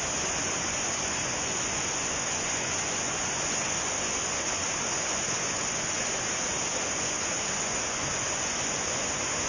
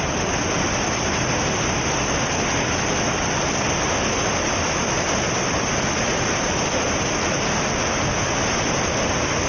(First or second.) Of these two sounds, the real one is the second